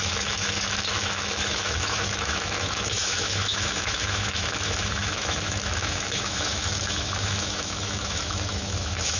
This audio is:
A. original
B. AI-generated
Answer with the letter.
B